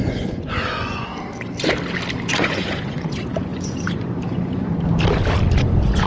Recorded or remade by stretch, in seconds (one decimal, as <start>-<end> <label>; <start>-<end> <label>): 0.0-1.1 remade; 1.1-2.3 recorded; 2.3-4.7 remade; 4.7-5.5 recorded; 5.5-6.1 remade